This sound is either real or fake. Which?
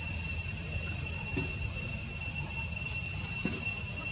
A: real